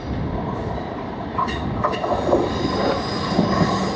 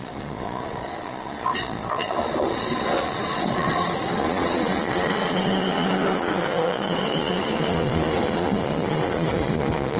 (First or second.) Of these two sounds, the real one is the first